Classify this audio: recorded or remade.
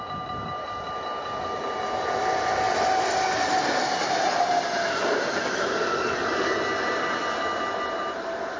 recorded